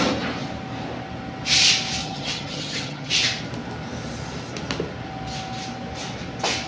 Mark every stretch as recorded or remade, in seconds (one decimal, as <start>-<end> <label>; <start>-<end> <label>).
0.0-2.0 recorded; 2.0-3.1 remade; 3.1-6.7 recorded